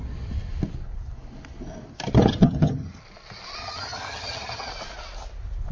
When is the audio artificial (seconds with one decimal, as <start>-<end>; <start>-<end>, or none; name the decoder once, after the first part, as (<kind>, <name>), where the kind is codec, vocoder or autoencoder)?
2.4-3.0 (vocoder, HiFi-GAN); 3.6-4.7